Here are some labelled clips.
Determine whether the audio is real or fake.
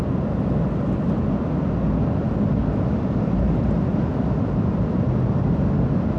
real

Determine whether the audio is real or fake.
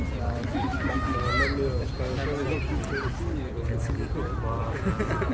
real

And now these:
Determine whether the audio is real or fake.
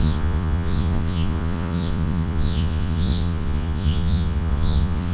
fake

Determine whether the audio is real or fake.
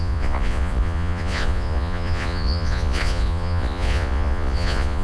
fake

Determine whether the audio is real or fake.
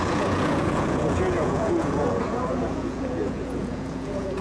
fake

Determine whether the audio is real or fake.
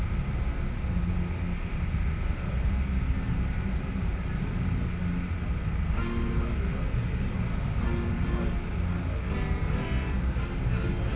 real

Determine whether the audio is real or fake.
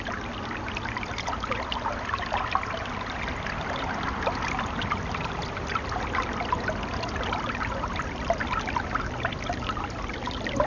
real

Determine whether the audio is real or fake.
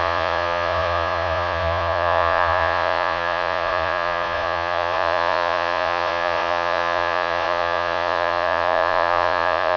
fake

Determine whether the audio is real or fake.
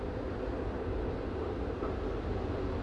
real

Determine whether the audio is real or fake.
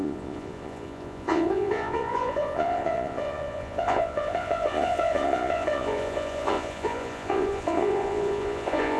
fake